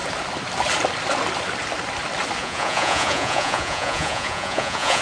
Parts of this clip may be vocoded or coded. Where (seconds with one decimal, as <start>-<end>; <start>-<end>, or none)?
2.4-5.0